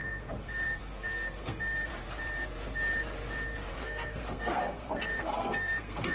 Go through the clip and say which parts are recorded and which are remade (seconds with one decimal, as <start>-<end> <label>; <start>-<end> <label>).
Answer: 0.0-1.9 remade; 1.9-3.7 recorded; 3.7-6.1 remade